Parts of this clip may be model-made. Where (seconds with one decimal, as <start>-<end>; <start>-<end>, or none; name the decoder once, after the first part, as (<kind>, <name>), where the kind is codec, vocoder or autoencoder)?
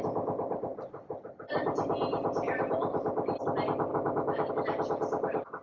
3.9-4.5 (autoencoder, DAC-VAE)